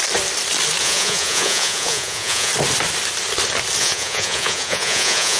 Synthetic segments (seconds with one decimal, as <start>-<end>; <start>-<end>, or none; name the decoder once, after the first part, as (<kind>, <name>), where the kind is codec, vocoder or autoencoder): 0.8-2.5 (vocoder, Vocos); 3.8-5.4